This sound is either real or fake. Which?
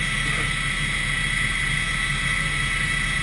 real